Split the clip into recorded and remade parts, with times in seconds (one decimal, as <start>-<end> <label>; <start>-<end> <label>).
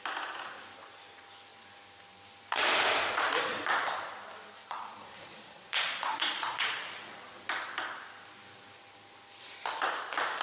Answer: 0.0-3.5 recorded; 3.5-4.1 remade; 4.1-4.6 recorded; 4.6-7.2 remade; 7.2-10.4 recorded